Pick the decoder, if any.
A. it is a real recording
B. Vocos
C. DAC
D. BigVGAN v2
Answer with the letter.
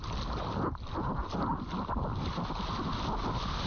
A